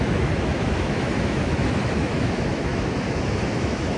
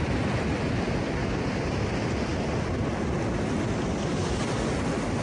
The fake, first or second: first